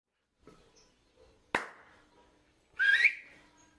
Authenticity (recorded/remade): recorded